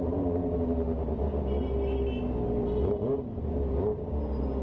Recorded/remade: recorded